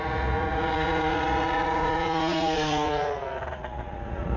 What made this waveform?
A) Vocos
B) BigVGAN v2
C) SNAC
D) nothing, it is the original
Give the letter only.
A